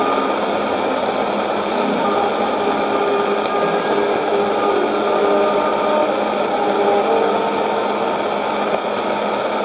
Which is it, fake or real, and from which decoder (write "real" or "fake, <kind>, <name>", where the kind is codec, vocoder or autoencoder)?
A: real